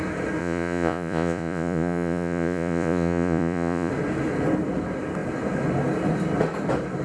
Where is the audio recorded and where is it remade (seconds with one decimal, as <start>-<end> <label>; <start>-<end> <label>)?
0.0-0.4 recorded; 0.4-3.9 remade; 3.9-7.0 recorded